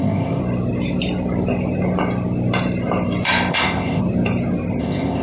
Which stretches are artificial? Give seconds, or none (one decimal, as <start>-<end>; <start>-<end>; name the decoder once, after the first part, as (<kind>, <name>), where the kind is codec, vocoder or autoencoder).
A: 0.0-0.4 (codec, ZipCodec); 3.5-4.0; 4.8-5.2

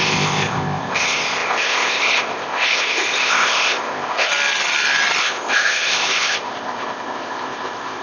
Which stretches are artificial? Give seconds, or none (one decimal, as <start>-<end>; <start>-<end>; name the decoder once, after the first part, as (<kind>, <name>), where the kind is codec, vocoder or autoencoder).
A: 0.0-4.3 (codec, ZipCodec); 5.2-8.0

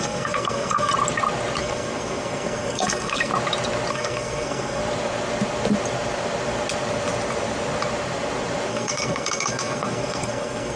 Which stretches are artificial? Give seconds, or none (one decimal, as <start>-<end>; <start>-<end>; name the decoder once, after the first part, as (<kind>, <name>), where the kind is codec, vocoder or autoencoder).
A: 0.0-0.9 (codec, SNAC); 1.6-3.3; 3.9-4.8; 8.7-10.8

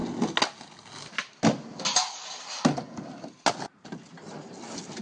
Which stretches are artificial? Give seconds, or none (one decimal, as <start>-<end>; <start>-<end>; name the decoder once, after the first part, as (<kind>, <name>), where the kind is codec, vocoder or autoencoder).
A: none

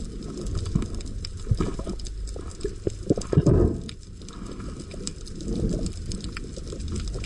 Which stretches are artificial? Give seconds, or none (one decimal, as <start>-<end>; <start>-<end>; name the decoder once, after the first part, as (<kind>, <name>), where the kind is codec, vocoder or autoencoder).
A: none

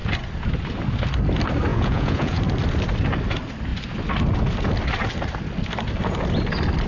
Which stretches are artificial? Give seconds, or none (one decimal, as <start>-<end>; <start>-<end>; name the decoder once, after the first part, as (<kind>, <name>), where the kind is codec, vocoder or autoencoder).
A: 1.7-2.4 (vocoder, Vocos)

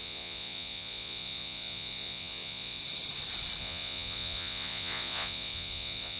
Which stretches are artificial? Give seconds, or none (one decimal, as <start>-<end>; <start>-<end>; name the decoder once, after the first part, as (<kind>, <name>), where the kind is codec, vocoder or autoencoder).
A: 0.0-2.8 (vocoder, Vocos); 3.6-6.2